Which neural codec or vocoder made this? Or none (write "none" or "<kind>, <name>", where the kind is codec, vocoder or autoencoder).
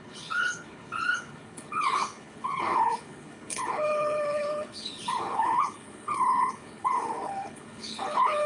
codec, HILCodec